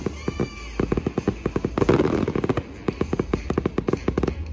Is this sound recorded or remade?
recorded